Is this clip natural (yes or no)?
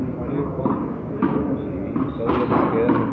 yes